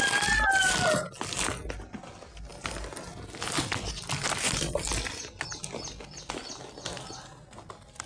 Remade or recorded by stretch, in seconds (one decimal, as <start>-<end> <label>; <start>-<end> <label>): 0.0-8.1 recorded